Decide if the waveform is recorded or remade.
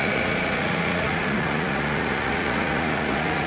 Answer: remade